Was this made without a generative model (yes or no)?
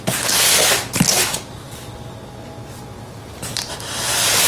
yes